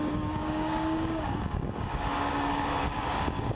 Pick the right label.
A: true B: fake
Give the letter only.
B